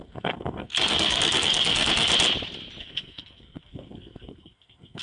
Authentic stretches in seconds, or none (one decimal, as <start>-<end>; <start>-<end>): 2.1-2.8